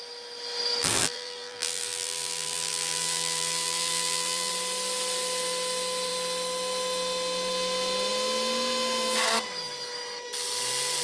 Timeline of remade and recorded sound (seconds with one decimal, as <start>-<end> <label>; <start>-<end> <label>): 0.0-0.8 recorded; 0.8-4.5 remade; 4.5-11.0 recorded

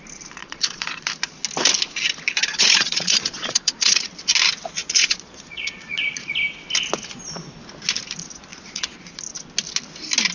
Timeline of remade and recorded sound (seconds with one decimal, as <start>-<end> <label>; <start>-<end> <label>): 0.0-0.4 recorded; 0.4-1.1 remade; 1.1-2.4 recorded; 2.4-4.1 remade; 4.1-4.8 recorded; 4.8-6.3 remade; 6.3-8.5 recorded; 8.5-9.2 remade; 9.2-10.3 recorded

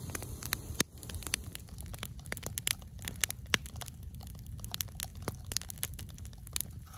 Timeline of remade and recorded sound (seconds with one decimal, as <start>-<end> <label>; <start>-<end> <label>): 0.0-7.0 recorded